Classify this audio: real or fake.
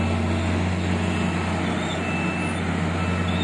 real